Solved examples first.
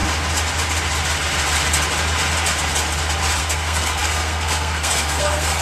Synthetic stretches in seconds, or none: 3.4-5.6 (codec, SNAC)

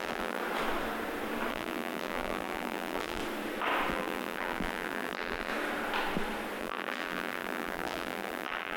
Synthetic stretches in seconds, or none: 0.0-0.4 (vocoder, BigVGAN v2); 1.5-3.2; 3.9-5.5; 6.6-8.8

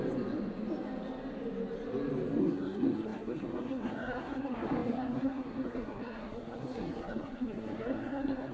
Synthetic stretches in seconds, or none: 2.4-8.5 (codec, SNAC)

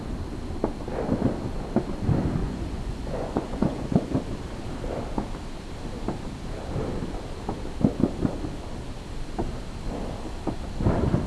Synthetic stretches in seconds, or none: 2.4-4.2 (vocoder, Vocos)

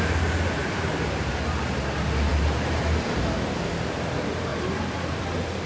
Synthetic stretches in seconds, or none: 0.6-1.3 (vocoder, BigVGAN v2); 4.5-5.2

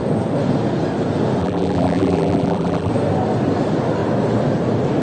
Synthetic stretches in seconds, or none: 1.4-2.9 (vocoder, BigVGAN v2)

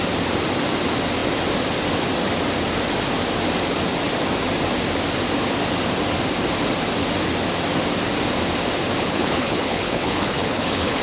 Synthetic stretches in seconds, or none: 9.0-11.0 (codec, HILCodec)